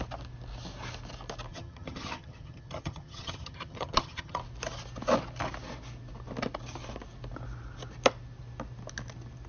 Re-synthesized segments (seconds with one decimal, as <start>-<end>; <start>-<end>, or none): 1.5-4.4